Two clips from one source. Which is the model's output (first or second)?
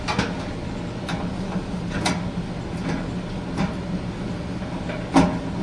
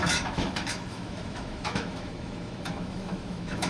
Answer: second